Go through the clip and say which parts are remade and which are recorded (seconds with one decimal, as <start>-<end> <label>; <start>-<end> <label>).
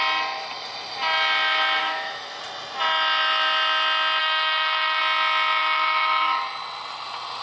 0.0-1.8 recorded; 1.8-2.4 remade; 2.4-4.2 recorded; 4.2-5.0 remade; 5.0-5.6 recorded; 5.6-6.4 remade; 6.4-7.4 recorded